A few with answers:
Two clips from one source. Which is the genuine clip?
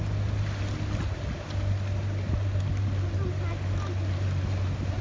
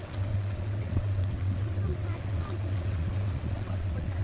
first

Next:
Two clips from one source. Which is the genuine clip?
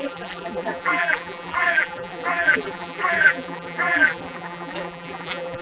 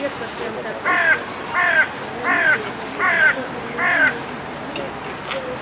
second